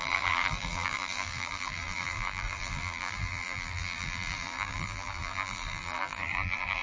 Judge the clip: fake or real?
fake